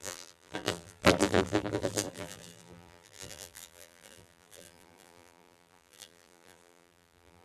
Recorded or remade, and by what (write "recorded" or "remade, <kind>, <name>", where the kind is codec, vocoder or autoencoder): remade, vocoder, BigVGAN v2